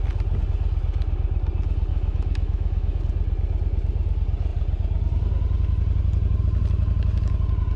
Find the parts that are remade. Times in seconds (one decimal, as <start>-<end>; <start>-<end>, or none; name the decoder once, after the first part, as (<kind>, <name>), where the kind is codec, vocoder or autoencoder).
1.9-3.0 (autoencoder, DAC-VAE)